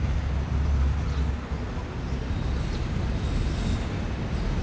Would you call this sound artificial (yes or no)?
no